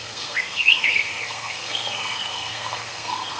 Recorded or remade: remade